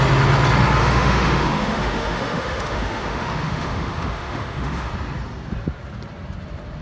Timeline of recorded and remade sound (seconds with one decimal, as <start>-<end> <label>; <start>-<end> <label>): 0.0-0.8 recorded; 0.8-4.9 remade; 4.9-6.8 recorded